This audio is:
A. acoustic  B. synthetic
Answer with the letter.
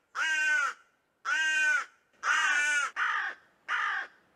A